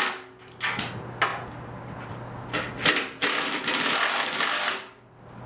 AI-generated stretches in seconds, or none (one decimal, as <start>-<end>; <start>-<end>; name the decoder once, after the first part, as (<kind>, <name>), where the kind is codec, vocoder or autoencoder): none